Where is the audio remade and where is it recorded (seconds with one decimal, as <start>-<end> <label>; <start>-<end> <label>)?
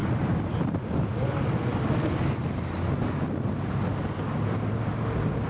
0.0-5.5 recorded